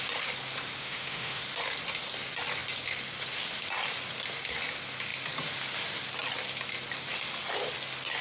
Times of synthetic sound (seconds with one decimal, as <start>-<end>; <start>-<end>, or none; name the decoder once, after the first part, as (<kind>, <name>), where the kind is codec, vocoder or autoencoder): 0.8-1.4 (autoencoder, DAC-VAE)